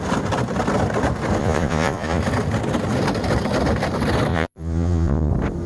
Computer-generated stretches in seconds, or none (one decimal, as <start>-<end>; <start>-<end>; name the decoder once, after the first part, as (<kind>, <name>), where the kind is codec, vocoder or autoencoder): 1.4-2.2 (vocoder, Vocos); 4.3-5.3